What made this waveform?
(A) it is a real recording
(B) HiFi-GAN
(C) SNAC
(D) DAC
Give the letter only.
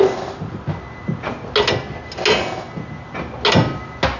A